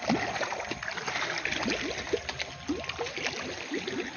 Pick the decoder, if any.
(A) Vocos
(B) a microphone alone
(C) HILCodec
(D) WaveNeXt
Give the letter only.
B